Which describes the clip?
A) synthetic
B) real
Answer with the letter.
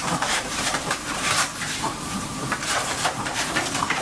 A